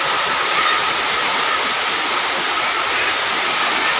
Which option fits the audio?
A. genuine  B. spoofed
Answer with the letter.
A